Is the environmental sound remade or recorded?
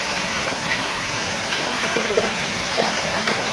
remade